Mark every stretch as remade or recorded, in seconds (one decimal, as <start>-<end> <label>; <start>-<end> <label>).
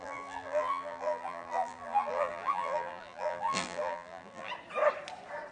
0.0-4.5 remade; 4.5-5.5 recorded